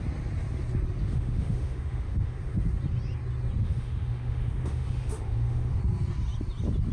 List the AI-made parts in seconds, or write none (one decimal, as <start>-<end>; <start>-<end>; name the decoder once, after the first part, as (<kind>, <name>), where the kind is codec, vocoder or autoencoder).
1.0-2.6 (autoencoder, DAC-VAE); 3.6-5.8